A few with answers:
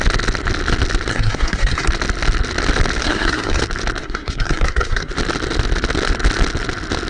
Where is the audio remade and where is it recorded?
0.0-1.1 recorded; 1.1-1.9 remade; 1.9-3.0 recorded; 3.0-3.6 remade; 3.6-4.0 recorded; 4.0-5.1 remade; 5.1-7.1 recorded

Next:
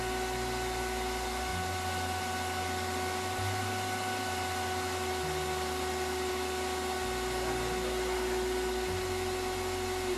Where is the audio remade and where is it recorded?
0.0-10.2 recorded

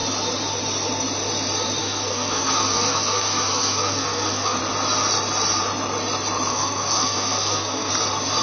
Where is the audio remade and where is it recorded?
0.0-1.8 recorded; 1.8-4.6 remade; 4.6-6.5 recorded; 6.5-7.9 remade; 7.9-8.4 recorded

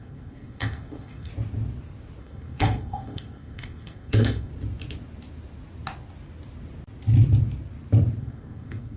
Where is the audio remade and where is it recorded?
0.0-1.3 remade; 1.3-2.2 recorded; 2.2-4.5 remade; 4.5-8.2 recorded; 8.2-9.0 remade

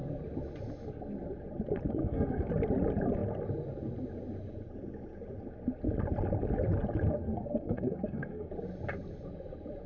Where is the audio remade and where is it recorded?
0.0-2.0 recorded; 2.0-2.5 remade; 2.5-7.2 recorded; 7.2-8.5 remade; 8.5-9.9 recorded

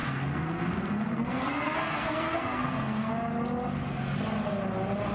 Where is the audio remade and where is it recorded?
0.0-3.1 remade; 3.1-5.1 recorded

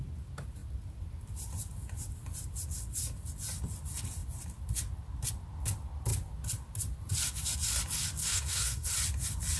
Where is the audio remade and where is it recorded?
0.0-8.2 recorded; 8.2-8.9 remade; 8.9-9.6 recorded

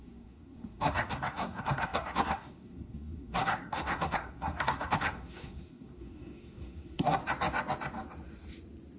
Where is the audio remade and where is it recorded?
0.0-7.2 remade; 7.2-9.0 recorded